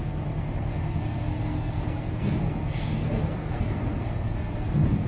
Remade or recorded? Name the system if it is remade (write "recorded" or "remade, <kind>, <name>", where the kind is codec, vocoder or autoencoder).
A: remade, codec, SNAC